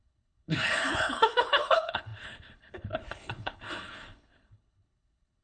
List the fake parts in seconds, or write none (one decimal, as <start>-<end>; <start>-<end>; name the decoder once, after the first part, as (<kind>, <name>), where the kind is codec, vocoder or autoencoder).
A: 0.0-5.4 (codec, HILCodec)